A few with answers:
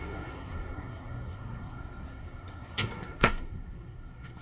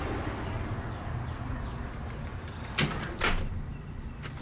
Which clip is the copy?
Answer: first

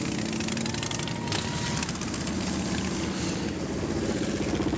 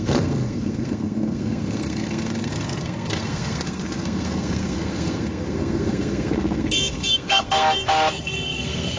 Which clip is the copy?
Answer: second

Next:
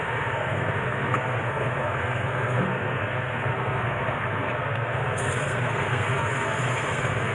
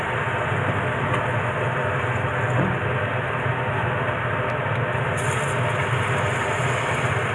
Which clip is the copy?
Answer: first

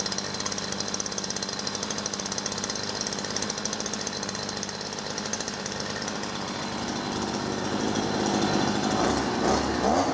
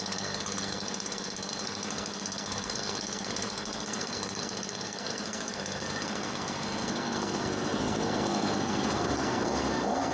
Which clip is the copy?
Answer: second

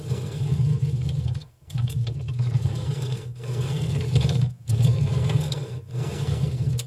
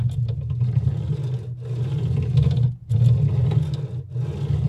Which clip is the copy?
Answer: first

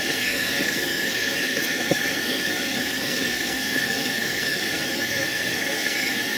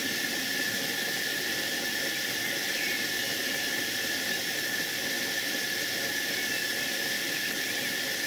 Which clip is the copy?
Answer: first